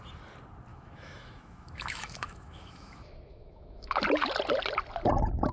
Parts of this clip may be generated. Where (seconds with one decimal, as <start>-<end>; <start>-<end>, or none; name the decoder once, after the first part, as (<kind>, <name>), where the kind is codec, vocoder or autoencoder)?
0.7-4.0 (autoencoder, DAC-VAE)